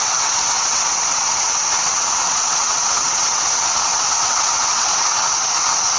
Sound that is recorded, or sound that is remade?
remade